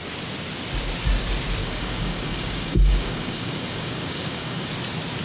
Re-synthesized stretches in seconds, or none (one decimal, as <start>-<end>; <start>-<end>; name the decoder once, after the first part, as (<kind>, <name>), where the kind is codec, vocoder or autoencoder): 1.6-4.7 (codec, DAC)